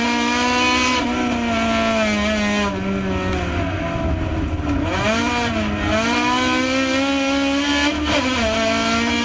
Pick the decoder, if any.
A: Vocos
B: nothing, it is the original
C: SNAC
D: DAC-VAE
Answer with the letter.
B